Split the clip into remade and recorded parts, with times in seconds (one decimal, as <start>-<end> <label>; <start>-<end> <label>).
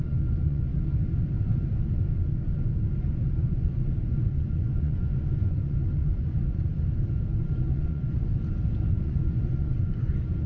0.0-0.7 remade; 0.7-3.1 recorded; 3.1-6.7 remade; 6.7-7.4 recorded; 7.4-8.3 remade; 8.3-8.9 recorded; 8.9-10.5 remade